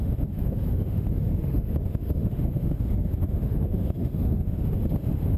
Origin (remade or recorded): remade